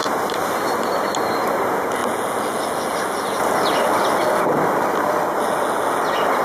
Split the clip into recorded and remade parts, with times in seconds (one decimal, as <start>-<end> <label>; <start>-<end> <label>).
0.0-1.1 remade; 1.1-6.4 recorded